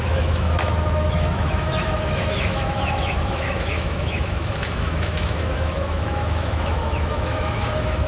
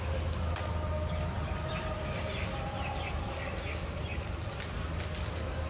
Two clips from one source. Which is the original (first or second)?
second